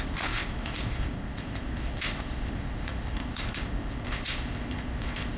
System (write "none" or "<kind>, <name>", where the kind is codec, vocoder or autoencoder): codec, ZipCodec